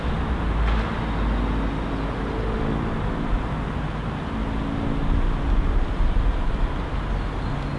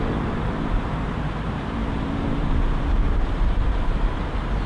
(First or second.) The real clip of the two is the first